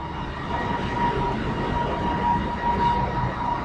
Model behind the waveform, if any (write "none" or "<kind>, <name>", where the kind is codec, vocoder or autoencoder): none